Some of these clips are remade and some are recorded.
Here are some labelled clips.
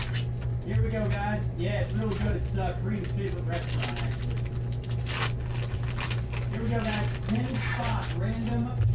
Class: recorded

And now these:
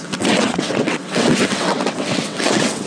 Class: remade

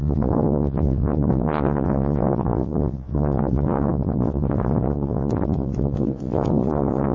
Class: remade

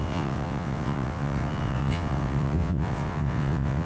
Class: remade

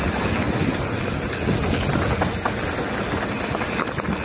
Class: recorded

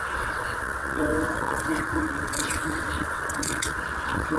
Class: remade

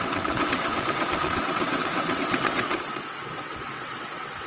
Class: remade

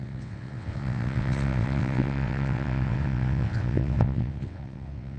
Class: remade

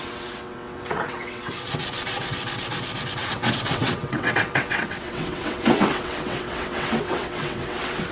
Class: remade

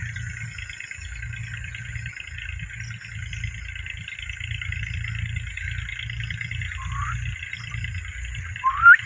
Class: recorded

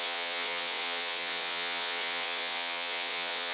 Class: remade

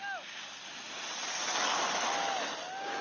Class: recorded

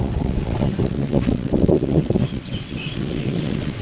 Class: remade